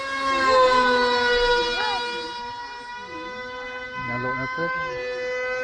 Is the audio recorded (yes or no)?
yes